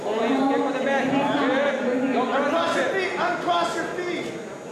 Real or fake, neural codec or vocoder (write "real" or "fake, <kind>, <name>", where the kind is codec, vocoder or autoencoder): real